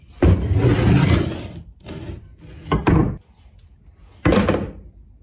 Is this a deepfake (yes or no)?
no